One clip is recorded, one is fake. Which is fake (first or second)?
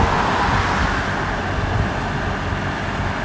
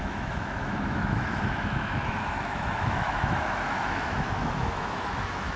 second